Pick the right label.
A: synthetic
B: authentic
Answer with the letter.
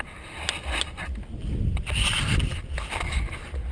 B